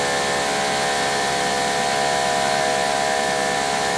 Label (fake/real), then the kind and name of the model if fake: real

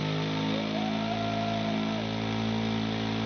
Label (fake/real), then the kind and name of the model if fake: real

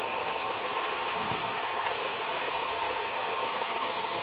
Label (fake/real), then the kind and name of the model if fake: fake, codec, SNAC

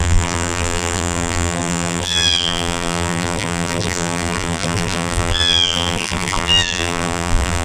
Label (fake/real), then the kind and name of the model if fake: fake, vocoder, BigVGAN v2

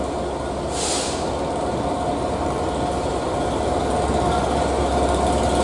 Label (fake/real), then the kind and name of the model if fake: real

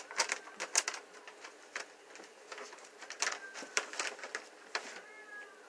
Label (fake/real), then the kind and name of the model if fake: real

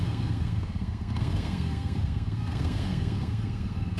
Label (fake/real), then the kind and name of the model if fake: fake, codec, SNAC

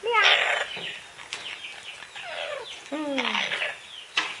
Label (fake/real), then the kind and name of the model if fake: real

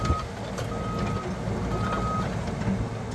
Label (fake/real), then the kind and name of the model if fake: real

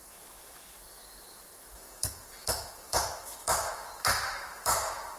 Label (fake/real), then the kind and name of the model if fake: fake, autoencoder, DAC-VAE